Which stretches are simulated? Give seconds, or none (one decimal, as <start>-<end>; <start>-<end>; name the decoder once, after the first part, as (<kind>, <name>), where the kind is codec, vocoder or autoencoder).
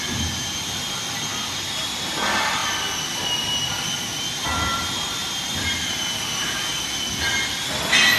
1.3-2.2 (vocoder, BigVGAN v2); 4.7-6.6